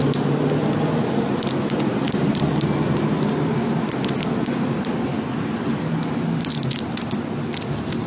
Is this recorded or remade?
recorded